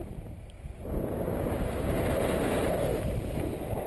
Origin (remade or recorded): remade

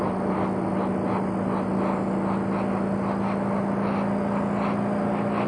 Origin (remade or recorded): recorded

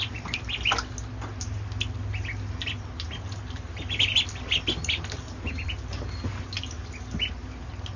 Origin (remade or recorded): recorded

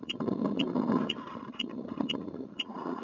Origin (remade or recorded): remade